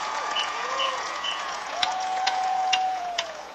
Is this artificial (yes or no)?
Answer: yes